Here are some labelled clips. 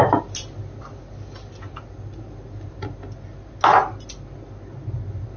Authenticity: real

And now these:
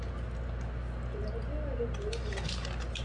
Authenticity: real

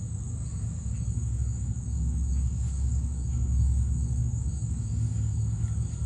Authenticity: fake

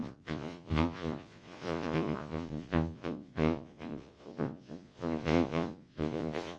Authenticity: fake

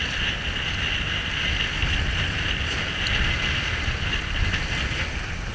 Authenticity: real